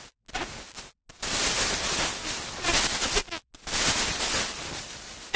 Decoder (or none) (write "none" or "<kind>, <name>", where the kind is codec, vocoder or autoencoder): none